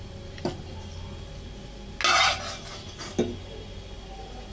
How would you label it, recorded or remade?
recorded